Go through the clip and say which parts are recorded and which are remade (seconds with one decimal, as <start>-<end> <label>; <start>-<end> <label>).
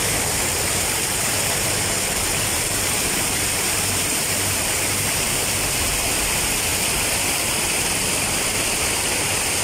0.0-9.6 remade